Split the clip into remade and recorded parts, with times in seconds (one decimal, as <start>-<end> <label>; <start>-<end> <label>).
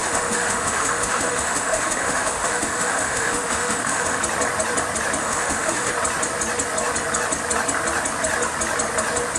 0.0-4.2 remade; 4.2-5.2 recorded; 5.2-5.9 remade; 5.9-9.4 recorded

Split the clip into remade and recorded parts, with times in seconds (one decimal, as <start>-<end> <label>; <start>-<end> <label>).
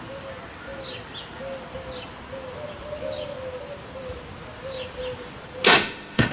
0.0-5.7 recorded; 5.7-6.3 remade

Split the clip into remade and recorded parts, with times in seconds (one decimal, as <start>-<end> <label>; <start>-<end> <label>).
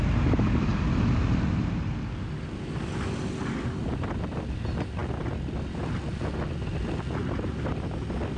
0.0-8.4 recorded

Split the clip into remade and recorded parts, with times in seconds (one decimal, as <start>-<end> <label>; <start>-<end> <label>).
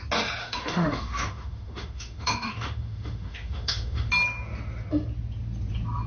0.0-0.4 recorded; 0.4-4.1 remade; 4.1-6.1 recorded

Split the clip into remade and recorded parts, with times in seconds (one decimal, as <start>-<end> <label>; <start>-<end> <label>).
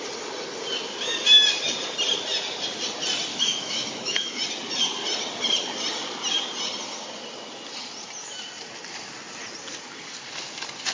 0.0-3.3 recorded; 3.3-4.4 remade; 4.4-10.9 recorded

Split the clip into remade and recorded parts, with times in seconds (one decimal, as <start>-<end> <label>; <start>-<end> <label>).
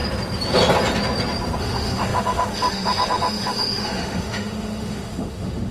0.0-1.6 recorded; 1.6-5.7 remade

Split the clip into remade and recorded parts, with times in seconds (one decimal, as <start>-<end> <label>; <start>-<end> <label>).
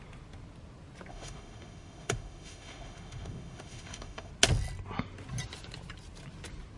0.0-1.1 recorded; 1.1-4.3 remade; 4.3-6.8 recorded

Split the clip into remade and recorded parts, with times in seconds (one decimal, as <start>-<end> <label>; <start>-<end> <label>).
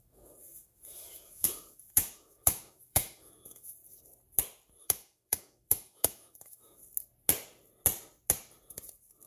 0.0-3.8 remade; 3.8-4.8 recorded; 4.8-6.8 remade; 6.8-9.3 recorded